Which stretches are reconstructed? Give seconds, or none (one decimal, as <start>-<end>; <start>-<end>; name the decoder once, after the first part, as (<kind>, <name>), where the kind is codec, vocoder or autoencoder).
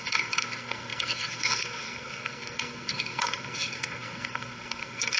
0.0-5.2 (codec, SNAC)